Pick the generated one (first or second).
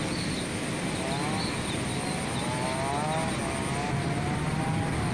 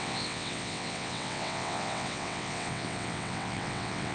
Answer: second